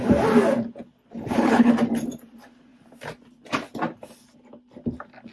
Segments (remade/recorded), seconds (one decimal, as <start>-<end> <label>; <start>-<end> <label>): 0.0-1.2 recorded; 1.2-1.7 remade; 1.7-5.3 recorded